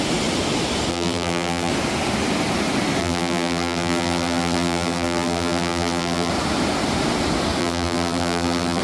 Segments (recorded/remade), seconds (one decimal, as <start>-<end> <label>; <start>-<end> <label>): 0.0-0.9 recorded; 0.9-1.7 remade; 1.7-3.0 recorded; 3.0-6.3 remade; 6.3-7.6 recorded; 7.6-8.8 remade